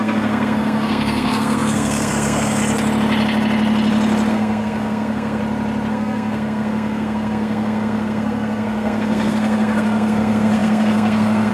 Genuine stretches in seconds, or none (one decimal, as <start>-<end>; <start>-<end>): 2.6-4.3; 5.4-5.9